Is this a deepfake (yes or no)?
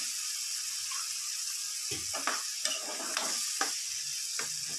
no